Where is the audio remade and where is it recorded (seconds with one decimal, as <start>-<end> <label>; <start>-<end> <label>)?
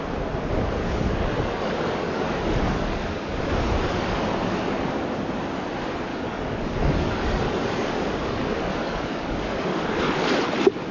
0.0-0.8 recorded; 0.8-4.9 remade; 4.9-6.1 recorded; 6.1-10.0 remade; 10.0-10.9 recorded